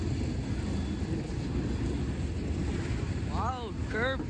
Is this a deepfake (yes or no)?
no